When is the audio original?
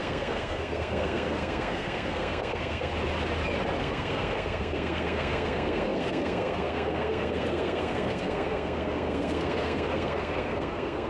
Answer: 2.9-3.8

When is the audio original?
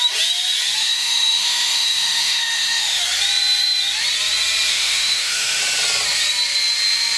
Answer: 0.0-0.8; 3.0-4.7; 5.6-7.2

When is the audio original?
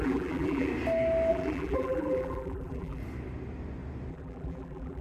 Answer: 0.7-1.3; 3.0-4.1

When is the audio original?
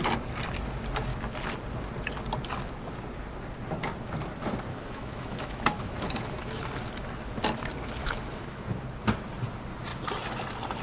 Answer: 0.0-4.7; 6.6-8.0; 8.8-10.8